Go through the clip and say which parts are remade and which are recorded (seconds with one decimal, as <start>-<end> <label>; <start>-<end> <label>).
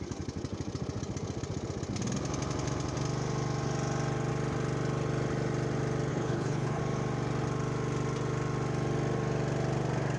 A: 0.0-6.1 recorded; 6.1-6.8 remade; 6.8-10.2 recorded